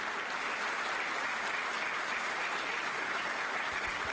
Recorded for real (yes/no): yes